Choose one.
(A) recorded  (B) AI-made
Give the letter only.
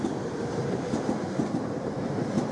B